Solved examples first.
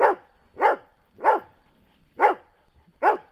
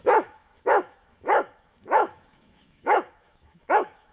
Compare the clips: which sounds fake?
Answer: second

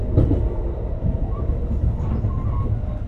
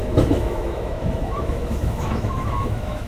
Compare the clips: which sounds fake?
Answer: second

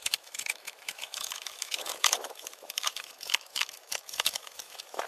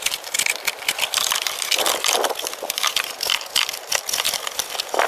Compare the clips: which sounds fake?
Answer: first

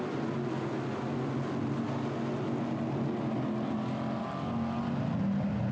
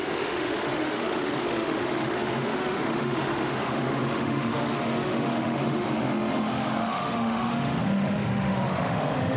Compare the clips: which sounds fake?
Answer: second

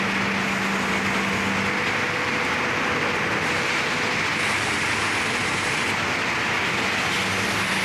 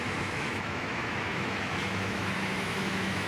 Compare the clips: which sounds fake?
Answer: second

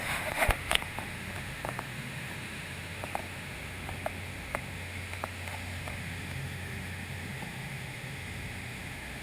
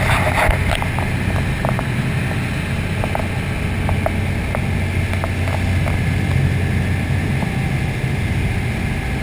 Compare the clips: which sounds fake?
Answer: first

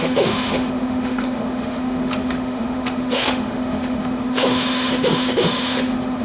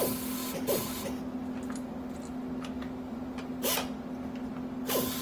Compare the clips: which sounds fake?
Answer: first